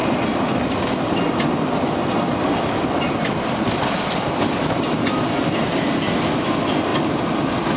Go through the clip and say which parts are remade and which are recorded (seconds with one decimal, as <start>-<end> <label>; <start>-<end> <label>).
0.0-4.7 remade; 4.7-6.9 recorded; 6.9-7.8 remade